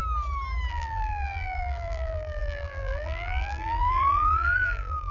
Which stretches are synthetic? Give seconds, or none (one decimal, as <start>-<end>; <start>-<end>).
0.7-5.1